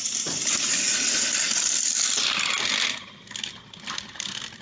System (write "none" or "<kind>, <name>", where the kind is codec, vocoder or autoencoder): none